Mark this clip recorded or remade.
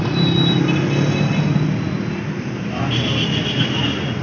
recorded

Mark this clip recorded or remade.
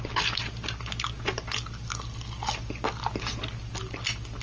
recorded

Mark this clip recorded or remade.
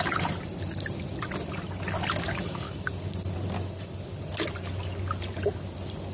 recorded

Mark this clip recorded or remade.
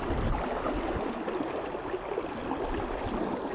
recorded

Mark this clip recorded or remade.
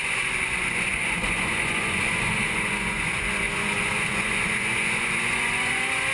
remade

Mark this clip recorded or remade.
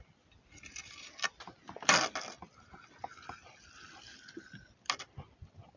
recorded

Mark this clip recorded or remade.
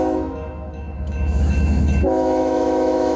remade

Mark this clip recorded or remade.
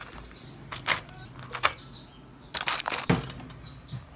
recorded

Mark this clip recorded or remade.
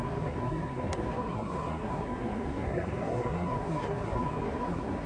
remade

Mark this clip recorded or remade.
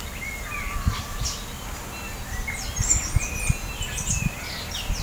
recorded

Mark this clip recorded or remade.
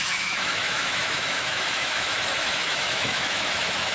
remade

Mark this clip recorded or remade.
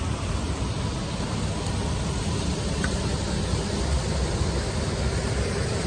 recorded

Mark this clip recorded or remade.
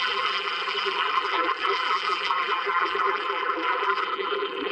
remade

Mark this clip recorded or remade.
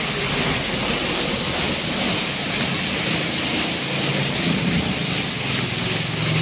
recorded